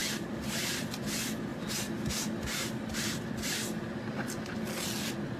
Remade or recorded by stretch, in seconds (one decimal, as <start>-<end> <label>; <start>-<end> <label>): 0.0-5.4 recorded